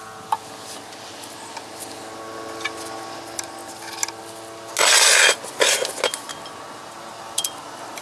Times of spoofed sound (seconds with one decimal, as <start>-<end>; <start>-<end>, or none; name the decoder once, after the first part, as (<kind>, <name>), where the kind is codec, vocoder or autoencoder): none